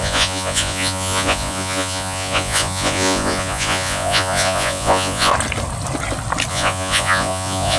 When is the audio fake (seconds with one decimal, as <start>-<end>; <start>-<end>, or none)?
0.0-5.3; 6.5-7.8